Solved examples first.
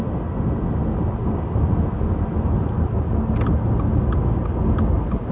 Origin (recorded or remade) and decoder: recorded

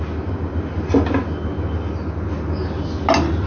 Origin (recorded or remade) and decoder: recorded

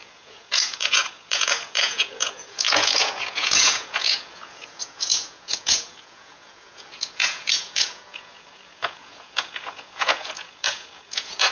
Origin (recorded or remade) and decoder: remade, vocoder, Vocos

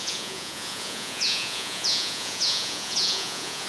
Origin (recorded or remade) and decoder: remade, vocoder, Vocos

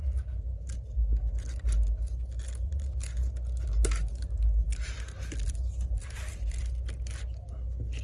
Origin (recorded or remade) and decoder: recorded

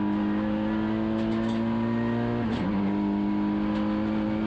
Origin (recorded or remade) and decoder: recorded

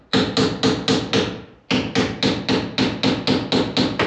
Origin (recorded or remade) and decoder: recorded